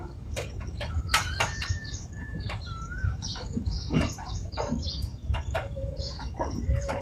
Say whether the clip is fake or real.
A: fake